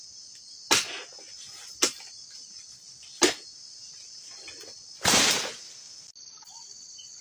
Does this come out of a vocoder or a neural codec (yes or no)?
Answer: no